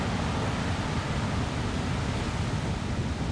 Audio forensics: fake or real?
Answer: real